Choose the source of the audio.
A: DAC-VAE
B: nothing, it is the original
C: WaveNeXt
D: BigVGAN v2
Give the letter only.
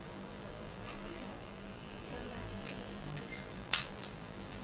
D